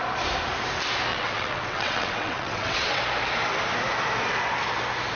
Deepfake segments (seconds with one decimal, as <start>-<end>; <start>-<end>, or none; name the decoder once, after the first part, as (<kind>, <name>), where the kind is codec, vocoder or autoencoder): 1.1-3.0 (vocoder, WaveNeXt)